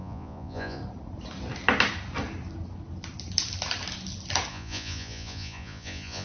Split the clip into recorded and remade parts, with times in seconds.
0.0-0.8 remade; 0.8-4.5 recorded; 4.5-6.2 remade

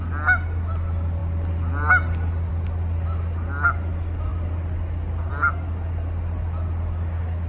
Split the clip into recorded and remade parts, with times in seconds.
0.0-7.5 recorded

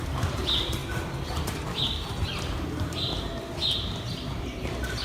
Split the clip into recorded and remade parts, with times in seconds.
0.0-0.8 remade; 0.8-2.2 recorded; 2.2-3.1 remade; 3.1-4.0 recorded; 4.0-5.0 remade

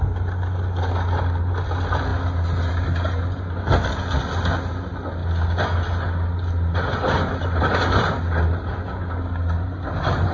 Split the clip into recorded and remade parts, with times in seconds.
0.0-10.3 recorded

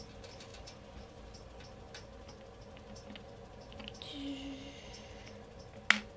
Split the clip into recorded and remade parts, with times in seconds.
0.0-6.2 recorded

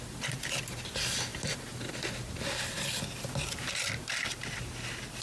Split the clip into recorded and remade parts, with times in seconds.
0.0-5.2 recorded